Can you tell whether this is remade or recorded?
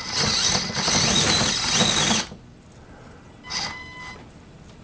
recorded